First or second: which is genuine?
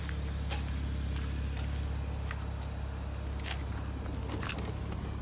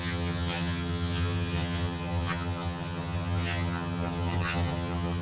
first